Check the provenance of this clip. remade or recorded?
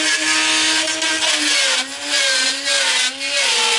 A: recorded